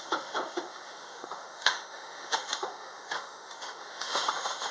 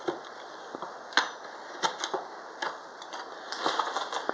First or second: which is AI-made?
first